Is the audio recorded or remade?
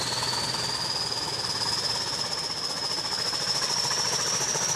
recorded